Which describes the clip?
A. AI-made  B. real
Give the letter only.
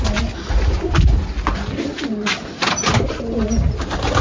B